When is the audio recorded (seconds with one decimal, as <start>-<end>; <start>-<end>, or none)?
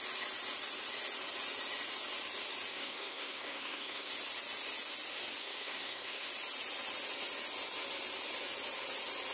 0.0-2.7; 4.1-5.4; 6.3-9.3